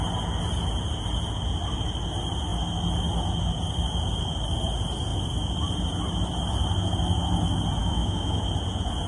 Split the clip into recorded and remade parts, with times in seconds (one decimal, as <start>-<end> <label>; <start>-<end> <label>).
0.0-7.8 recorded; 7.8-8.4 remade; 8.4-9.1 recorded